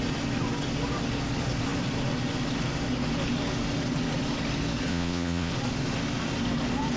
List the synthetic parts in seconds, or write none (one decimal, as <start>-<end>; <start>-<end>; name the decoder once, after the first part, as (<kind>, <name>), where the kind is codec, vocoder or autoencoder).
4.9-5.5 (vocoder, Vocos)